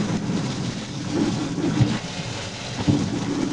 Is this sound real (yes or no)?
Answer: yes